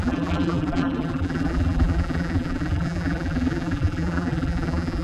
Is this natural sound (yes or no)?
no